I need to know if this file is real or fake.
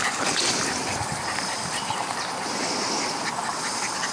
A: real